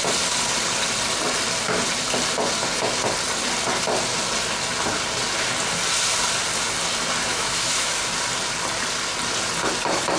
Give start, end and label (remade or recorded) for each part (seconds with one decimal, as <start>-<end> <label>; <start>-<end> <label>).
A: 0.0-7.3 recorded; 7.3-7.9 remade; 7.9-10.2 recorded

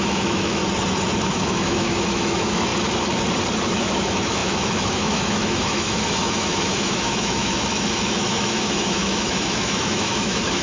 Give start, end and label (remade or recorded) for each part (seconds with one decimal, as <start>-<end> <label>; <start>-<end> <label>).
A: 0.0-0.6 remade; 0.6-1.3 recorded; 1.3-2.7 remade; 2.7-3.6 recorded; 3.6-10.6 remade

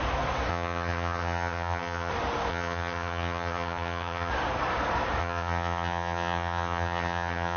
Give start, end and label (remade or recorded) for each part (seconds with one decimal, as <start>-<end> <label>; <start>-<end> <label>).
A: 0.0-0.5 recorded; 0.5-2.1 remade; 2.1-2.5 recorded; 2.5-4.3 remade; 4.3-5.2 recorded; 5.2-7.6 remade

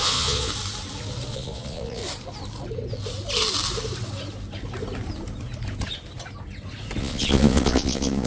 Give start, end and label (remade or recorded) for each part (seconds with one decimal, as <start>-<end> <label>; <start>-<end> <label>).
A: 0.0-0.5 remade; 0.5-1.3 recorded; 1.3-2.0 remade; 2.0-7.0 recorded; 7.0-8.3 remade

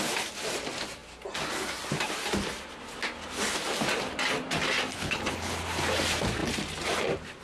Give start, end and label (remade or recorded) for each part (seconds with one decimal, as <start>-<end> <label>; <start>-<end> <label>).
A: 0.0-4.9 recorded; 4.9-5.6 remade; 5.6-7.4 recorded

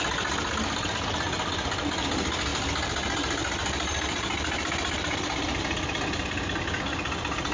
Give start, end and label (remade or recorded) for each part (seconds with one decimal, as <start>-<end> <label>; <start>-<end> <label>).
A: 0.0-2.5 recorded; 2.5-5.6 remade; 5.6-7.5 recorded

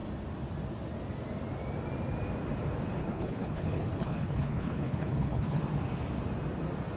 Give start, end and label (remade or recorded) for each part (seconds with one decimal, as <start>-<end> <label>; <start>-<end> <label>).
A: 0.0-3.0 recorded; 3.0-5.6 remade; 5.6-7.0 recorded